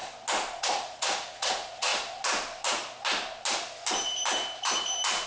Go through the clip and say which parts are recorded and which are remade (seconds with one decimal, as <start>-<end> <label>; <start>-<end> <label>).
0.0-0.6 recorded; 0.6-1.9 remade; 1.9-5.3 recorded